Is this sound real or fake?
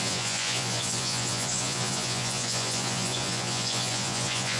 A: fake